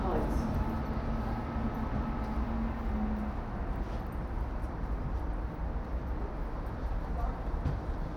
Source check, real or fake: real